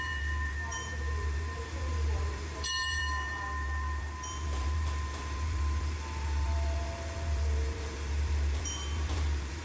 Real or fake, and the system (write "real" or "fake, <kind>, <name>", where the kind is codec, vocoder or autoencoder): fake, vocoder, BigVGAN v2